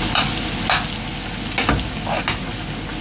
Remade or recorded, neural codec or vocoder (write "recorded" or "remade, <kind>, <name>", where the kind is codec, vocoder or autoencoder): recorded